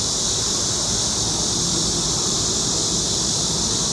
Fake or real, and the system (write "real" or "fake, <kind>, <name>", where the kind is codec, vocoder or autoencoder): real